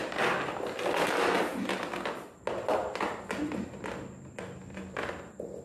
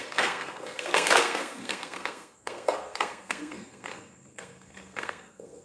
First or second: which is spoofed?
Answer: second